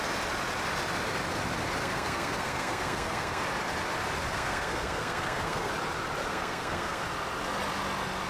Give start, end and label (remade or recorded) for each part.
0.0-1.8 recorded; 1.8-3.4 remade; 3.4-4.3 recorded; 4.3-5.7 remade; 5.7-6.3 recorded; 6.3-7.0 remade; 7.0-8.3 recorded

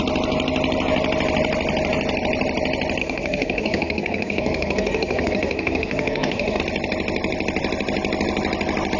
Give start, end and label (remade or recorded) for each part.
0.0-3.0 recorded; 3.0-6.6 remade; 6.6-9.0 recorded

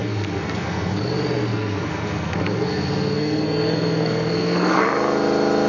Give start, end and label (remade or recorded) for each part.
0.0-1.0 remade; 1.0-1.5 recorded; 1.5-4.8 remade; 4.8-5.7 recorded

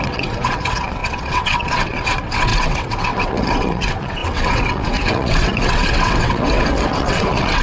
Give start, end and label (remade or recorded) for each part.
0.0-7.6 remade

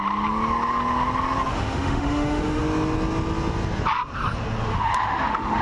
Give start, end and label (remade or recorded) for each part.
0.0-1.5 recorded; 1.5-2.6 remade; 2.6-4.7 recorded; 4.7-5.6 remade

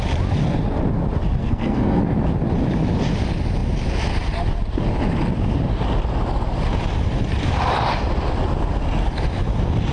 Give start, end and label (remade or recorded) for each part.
0.0-1.4 recorded; 1.4-2.0 remade; 2.0-9.9 recorded

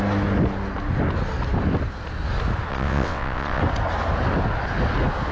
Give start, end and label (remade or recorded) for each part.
0.0-2.7 recorded; 2.7-3.6 remade; 3.6-5.3 recorded

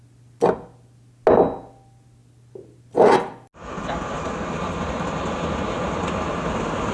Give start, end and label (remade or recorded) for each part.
0.0-6.9 recorded